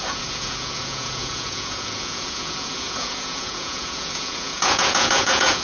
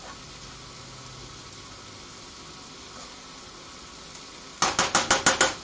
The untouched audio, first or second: second